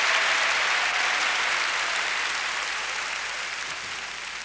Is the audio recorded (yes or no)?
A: yes